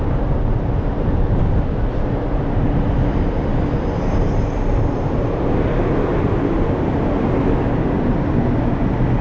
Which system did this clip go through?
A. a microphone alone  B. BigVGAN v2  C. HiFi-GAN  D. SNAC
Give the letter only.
A